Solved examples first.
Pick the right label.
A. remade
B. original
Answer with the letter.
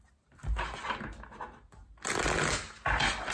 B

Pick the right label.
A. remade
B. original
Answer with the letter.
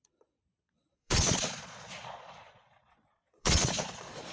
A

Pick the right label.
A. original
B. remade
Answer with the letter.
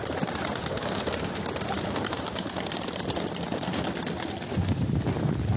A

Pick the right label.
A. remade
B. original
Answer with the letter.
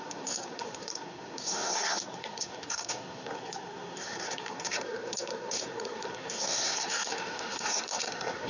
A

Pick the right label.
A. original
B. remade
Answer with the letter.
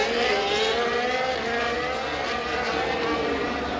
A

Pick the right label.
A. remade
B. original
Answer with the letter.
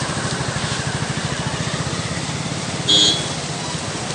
B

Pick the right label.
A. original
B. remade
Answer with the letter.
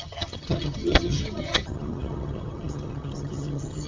B